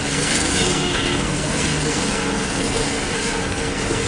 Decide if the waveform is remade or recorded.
remade